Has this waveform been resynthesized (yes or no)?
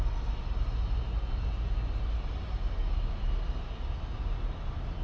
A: no